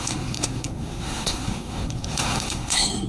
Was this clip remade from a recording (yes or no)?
yes